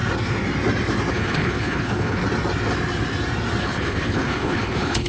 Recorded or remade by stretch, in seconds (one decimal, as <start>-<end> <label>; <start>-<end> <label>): 0.0-1.1 recorded; 1.1-2.2 remade; 2.2-3.6 recorded; 3.6-5.1 remade